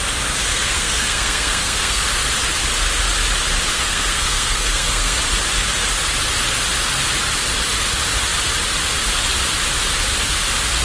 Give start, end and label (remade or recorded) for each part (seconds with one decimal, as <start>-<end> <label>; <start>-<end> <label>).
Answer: 0.0-0.5 recorded; 0.5-2.0 remade; 2.0-3.7 recorded; 3.7-5.2 remade; 5.2-10.8 recorded